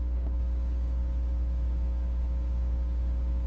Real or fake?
fake